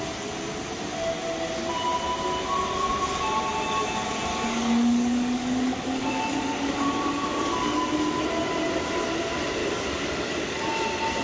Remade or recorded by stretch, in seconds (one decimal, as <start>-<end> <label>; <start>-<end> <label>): 0.0-4.3 recorded; 4.3-8.2 remade; 8.2-9.6 recorded; 9.6-10.7 remade; 10.7-11.2 recorded

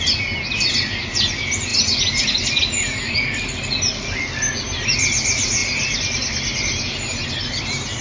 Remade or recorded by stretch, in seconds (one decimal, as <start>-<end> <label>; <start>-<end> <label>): 0.0-8.0 recorded

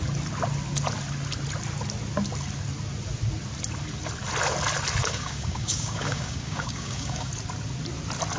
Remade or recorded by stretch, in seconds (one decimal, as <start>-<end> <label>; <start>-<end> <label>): 0.0-5.0 recorded; 5.0-7.3 remade; 7.3-8.4 recorded